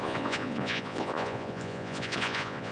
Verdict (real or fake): fake